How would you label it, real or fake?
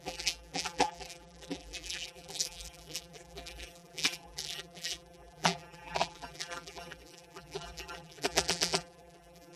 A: fake